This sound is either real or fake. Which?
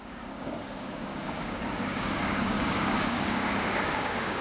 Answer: fake